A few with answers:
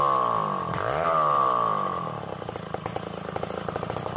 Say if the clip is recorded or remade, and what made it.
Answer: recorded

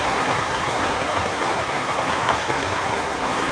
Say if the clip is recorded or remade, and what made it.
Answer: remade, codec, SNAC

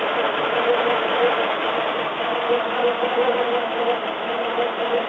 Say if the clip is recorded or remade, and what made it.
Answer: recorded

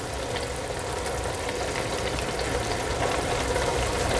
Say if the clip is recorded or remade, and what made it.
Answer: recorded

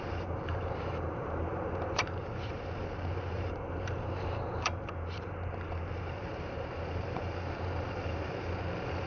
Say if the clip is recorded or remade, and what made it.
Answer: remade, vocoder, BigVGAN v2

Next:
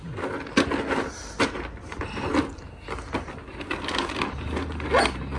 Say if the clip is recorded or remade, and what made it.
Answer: recorded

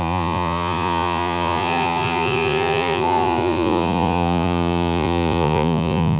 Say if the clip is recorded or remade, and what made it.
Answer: remade, vocoder, Vocos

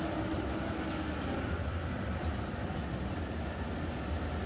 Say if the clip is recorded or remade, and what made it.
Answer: recorded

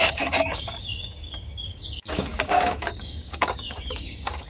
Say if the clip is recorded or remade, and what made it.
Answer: remade, codec, DAC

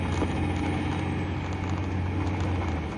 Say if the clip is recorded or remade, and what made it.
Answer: recorded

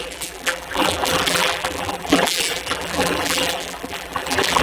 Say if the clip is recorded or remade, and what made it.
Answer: remade, vocoder, BigVGAN v2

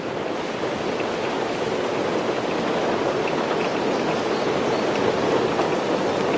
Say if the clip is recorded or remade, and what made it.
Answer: recorded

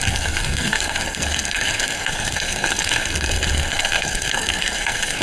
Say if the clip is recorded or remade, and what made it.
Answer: remade, codec, SNAC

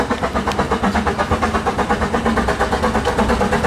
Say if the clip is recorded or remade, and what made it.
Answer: recorded